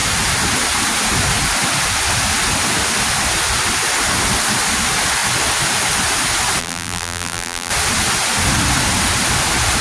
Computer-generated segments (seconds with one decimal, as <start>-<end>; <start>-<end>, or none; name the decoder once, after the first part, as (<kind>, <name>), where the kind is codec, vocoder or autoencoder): 6.6-7.7 (vocoder, BigVGAN v2)